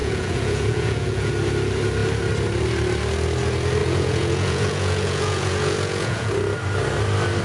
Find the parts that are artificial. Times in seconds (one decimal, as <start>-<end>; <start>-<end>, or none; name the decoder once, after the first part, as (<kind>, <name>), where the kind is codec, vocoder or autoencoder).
0.0-1.3 (vocoder, Vocos); 3.8-6.3